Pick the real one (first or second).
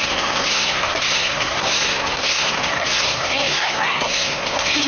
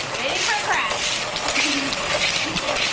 second